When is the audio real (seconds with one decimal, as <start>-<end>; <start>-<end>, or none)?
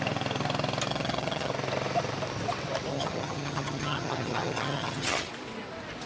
0.0-0.9; 1.5-2.9; 5.3-6.1